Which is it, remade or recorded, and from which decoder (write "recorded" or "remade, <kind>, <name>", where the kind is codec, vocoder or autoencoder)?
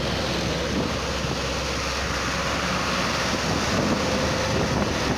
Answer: recorded